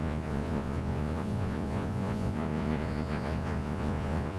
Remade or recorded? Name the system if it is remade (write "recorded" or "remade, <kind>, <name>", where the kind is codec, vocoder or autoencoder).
remade, vocoder, Vocos